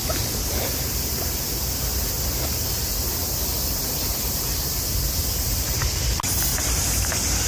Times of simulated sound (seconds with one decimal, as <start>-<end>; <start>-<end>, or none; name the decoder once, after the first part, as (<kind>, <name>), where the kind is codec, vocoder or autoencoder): 0.0-1.4 (vocoder, BigVGAN v2); 3.2-4.6; 6.5-7.1

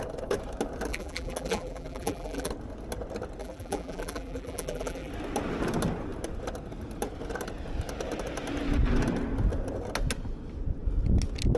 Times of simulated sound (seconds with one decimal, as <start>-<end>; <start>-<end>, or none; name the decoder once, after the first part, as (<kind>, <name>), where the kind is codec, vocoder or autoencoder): 0.9-2.5 (vocoder, BigVGAN v2); 3.4-5.1

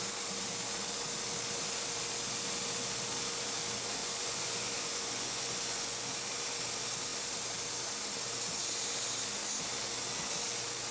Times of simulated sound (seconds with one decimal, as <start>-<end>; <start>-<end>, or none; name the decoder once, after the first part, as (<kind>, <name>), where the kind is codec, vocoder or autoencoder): 4.0-6.1 (vocoder, Vocos)

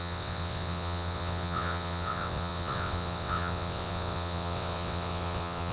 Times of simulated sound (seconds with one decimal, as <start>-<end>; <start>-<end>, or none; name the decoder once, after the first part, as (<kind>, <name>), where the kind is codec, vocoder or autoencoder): 0.0-5.7 (vocoder, WaveNeXt)

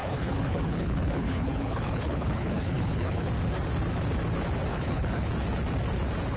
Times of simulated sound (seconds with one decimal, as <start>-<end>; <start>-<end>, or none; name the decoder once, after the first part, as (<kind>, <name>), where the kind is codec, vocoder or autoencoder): 0.0-3.3 (codec, HILCodec); 4.7-5.3

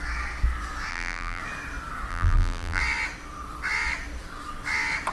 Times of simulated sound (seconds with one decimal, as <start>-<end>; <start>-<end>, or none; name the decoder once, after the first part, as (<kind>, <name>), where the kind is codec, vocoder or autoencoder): 0.9-1.4 (vocoder, BigVGAN v2); 2.1-2.8

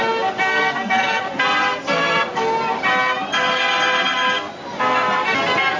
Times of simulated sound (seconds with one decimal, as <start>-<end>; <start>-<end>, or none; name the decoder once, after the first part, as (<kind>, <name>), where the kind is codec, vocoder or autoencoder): 0.5-1.2 (codec, SNAC)